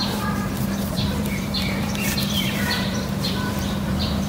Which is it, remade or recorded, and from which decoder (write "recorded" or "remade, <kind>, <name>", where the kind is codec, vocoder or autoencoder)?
remade, vocoder, BigVGAN v2